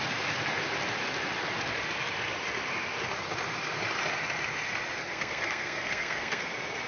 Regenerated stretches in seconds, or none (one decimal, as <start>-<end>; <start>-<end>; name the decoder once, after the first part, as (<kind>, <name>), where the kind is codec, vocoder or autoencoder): 5.0-6.5 (codec, SNAC)